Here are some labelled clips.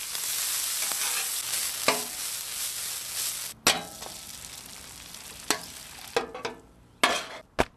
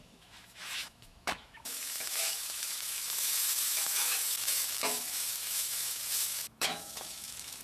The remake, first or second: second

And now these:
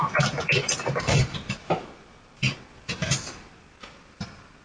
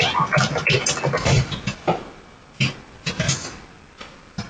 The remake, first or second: first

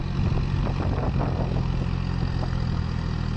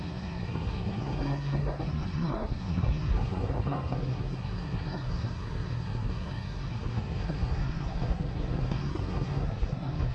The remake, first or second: second